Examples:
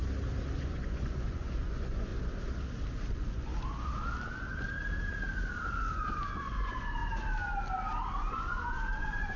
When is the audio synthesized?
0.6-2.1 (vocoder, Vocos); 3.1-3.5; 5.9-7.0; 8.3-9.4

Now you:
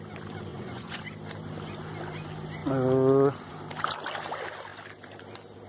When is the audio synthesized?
0.5-1.0 (vocoder, Vocos)

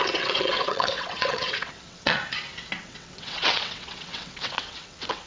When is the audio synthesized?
0.0-2.2 (vocoder, WaveNeXt); 2.8-5.3

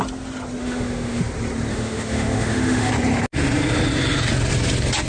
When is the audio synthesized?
0.6-1.2 (autoencoder, DAC-VAE); 1.7-2.9

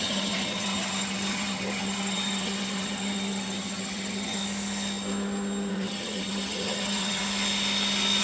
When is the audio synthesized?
0.0-4.4 (vocoder, HiFi-GAN); 5.7-7.2

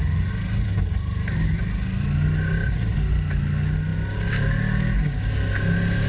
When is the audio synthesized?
none

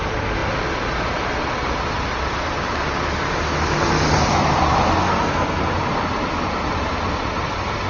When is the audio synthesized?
5.0-5.6 (codec, SNAC)

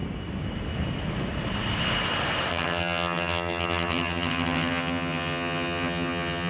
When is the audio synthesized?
2.5-6.5 (vocoder, HiFi-GAN)